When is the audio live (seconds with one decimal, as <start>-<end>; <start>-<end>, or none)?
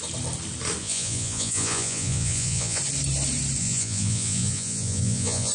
0.0-0.8; 2.8-3.6